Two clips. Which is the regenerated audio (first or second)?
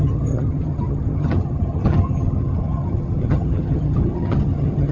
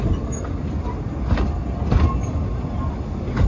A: first